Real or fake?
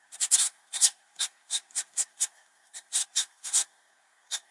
fake